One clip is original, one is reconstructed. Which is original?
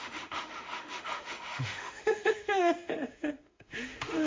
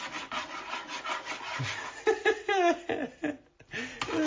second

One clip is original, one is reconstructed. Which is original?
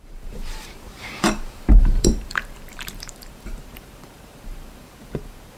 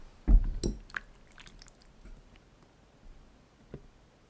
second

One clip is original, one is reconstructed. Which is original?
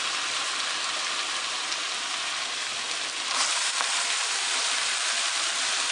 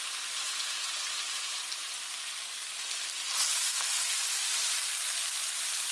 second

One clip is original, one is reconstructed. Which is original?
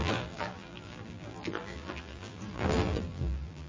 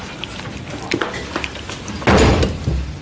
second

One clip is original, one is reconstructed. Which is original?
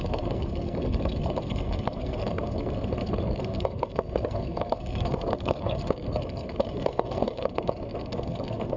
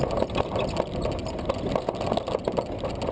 second